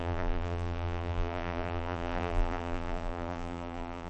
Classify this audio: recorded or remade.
remade